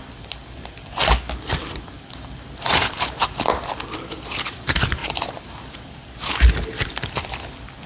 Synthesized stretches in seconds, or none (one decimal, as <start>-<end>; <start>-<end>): 5.0-6.5

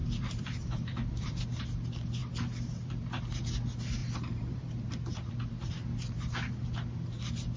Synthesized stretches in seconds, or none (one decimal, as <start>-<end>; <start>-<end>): 0.0-1.4; 2.2-3.2; 4.0-5.7

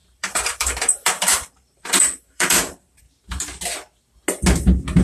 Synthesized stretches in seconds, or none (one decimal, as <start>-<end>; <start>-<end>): 0.0-3.0

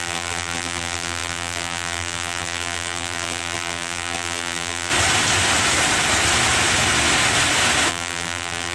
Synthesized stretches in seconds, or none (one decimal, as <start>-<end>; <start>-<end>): 0.0-4.9; 7.9-8.7

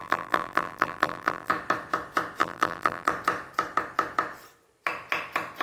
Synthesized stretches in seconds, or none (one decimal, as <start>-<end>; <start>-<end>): 0.0-1.5; 2.4-3.1

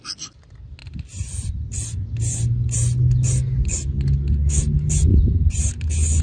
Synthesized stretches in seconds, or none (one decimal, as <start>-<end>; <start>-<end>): 5.1-5.7

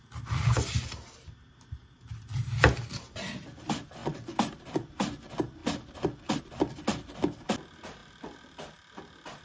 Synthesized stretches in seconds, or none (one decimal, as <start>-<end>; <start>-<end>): 4.0-4.6; 5.6-6.4; 8.0-9.0

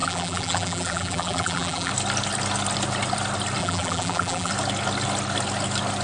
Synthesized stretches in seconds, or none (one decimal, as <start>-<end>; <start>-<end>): 0.0-1.9; 3.6-4.5